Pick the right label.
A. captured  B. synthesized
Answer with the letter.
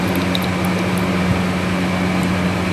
A